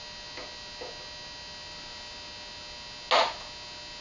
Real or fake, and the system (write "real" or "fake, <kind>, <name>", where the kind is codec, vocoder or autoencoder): real